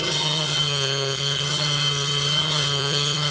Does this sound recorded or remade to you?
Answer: remade